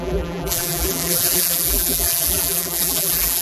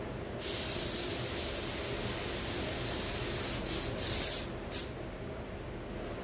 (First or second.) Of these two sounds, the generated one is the first